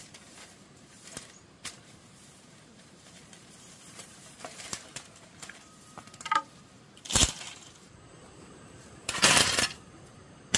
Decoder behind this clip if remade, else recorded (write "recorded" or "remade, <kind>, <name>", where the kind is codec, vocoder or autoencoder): remade, vocoder, BigVGAN v2